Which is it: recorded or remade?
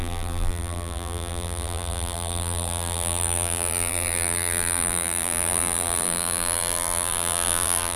remade